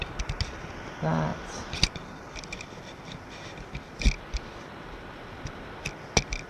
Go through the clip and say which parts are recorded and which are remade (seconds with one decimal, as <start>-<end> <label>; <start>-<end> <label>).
0.0-6.5 recorded